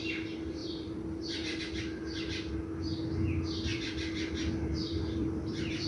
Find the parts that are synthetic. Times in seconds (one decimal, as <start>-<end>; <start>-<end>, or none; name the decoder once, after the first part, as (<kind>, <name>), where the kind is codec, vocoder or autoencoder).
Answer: 0.6-1.6 (vocoder, BigVGAN v2); 3.7-5.9